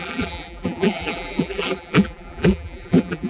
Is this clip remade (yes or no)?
yes